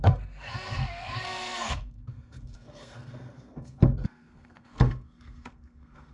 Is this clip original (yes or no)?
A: no